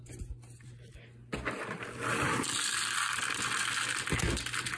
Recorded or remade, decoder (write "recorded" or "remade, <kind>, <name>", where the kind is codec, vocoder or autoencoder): recorded